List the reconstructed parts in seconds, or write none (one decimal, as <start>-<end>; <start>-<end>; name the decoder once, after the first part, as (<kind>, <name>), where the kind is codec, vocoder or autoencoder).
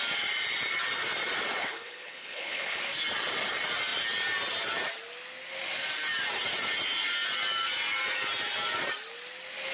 1.6-2.8 (codec, HILCodec)